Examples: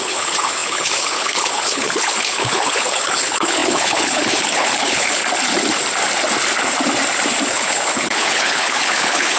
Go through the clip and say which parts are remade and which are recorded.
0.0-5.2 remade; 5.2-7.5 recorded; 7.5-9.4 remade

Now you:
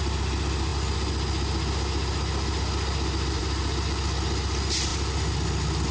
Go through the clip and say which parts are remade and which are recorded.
0.0-5.9 recorded

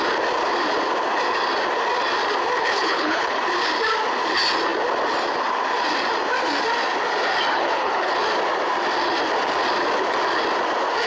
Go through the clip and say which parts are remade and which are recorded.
0.0-2.6 recorded; 2.6-3.4 remade; 3.4-7.5 recorded; 7.5-8.1 remade; 8.1-11.1 recorded

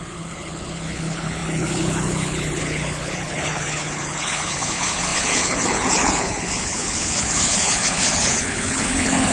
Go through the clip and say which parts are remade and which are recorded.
0.0-9.3 remade

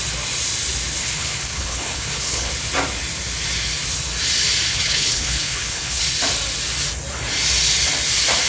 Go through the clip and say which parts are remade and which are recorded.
0.0-1.0 recorded; 1.0-2.5 remade; 2.5-4.7 recorded; 4.7-6.0 remade; 6.0-8.5 recorded

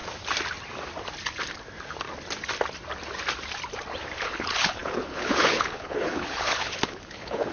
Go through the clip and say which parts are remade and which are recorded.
0.0-4.2 recorded; 4.2-7.5 remade